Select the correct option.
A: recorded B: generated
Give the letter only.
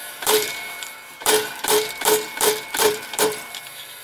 B